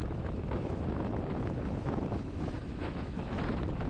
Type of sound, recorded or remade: remade